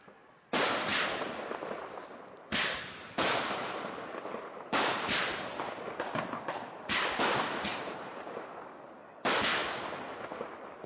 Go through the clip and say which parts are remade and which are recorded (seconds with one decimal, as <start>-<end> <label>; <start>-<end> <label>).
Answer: 0.0-0.9 recorded; 0.9-5.8 remade; 5.8-7.7 recorded; 7.7-8.5 remade; 8.5-9.6 recorded; 9.6-10.2 remade; 10.2-10.9 recorded